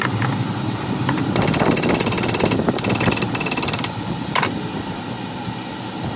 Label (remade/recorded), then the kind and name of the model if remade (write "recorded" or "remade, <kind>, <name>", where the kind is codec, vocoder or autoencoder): recorded